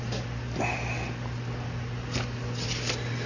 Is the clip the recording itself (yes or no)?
yes